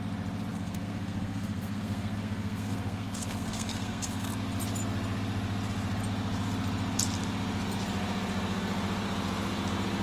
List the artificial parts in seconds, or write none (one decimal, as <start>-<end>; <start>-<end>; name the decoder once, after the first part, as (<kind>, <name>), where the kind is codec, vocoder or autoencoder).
0.5-4.3 (codec, SNAC)